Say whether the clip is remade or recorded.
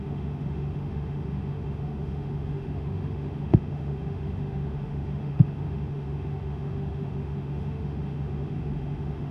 remade